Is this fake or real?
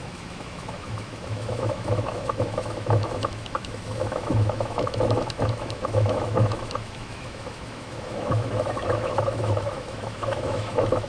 fake